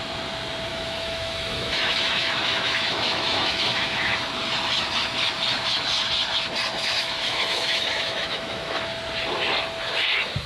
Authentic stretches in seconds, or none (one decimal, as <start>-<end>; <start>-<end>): 0.0-0.7; 4.3-6.7; 8.9-10.5